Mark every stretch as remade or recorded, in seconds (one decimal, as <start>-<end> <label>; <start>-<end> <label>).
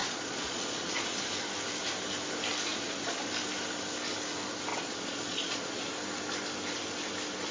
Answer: 0.0-1.3 remade; 1.3-2.7 recorded; 2.7-3.3 remade; 3.3-4.7 recorded; 4.7-5.9 remade; 5.9-7.5 recorded